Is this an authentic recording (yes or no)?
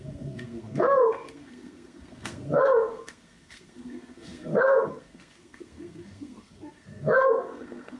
no